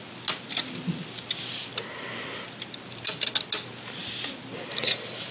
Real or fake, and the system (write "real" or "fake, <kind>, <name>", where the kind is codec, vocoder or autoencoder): real